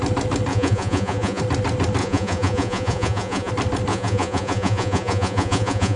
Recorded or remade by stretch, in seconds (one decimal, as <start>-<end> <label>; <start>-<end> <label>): 0.0-0.5 recorded; 0.5-1.4 remade; 1.4-2.0 recorded; 2.0-3.5 remade; 3.5-3.9 recorded; 3.9-6.0 remade